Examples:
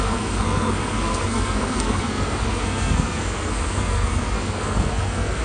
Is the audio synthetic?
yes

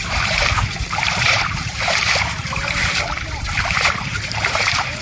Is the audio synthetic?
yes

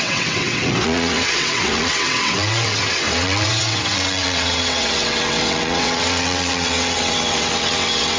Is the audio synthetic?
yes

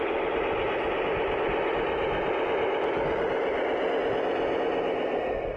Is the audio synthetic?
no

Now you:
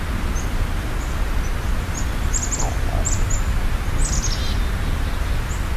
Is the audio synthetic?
no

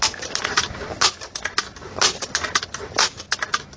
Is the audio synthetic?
no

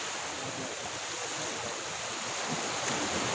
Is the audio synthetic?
no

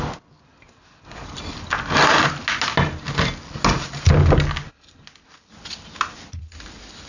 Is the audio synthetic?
no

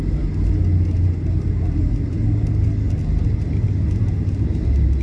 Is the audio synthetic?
no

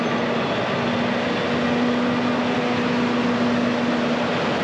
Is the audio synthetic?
no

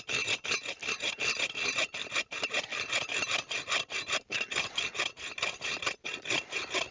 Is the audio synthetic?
no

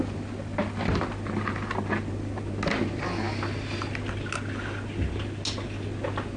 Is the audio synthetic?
no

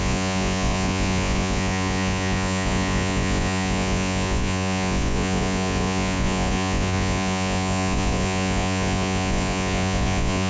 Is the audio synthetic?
yes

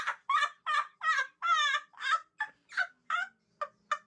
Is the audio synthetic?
no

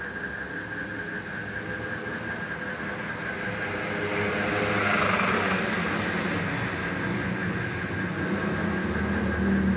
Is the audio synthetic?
no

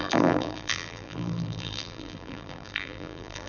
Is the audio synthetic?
yes